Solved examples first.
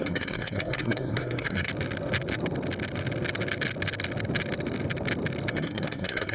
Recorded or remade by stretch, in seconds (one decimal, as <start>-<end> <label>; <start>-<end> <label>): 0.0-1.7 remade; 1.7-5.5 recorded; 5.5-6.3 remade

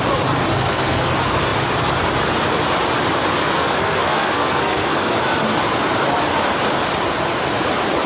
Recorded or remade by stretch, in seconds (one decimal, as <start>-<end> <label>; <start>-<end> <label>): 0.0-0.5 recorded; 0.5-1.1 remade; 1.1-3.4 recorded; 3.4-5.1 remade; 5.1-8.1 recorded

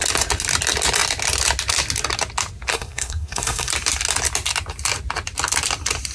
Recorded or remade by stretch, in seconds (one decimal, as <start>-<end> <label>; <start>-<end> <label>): 0.0-2.7 recorded; 2.7-3.7 remade; 3.7-6.1 recorded

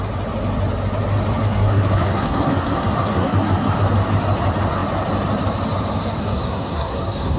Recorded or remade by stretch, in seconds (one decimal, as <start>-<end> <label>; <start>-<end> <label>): 0.0-1.4 recorded; 1.4-3.8 remade; 3.8-6.2 recorded; 6.2-7.4 remade

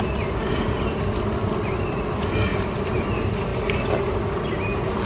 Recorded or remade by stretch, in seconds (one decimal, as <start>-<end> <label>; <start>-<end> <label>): 0.0-5.1 recorded

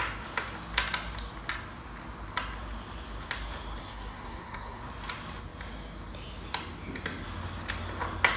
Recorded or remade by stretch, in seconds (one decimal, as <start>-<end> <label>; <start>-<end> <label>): 0.0-3.8 recorded; 3.8-4.8 remade; 4.8-8.4 recorded

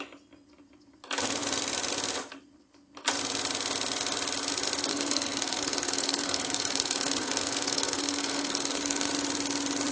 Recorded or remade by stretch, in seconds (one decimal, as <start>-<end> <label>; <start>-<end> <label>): 0.0-4.9 recorded; 4.9-9.1 remade; 9.1-9.9 recorded